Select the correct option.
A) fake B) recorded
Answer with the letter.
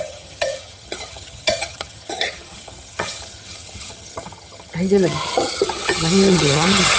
A